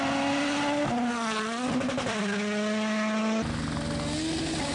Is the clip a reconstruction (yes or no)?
no